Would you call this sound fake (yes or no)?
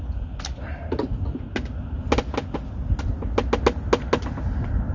no